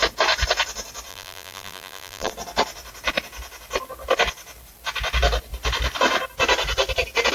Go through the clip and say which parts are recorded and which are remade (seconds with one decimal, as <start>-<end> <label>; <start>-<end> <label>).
0.0-1.1 recorded; 1.1-2.3 remade; 2.3-7.3 recorded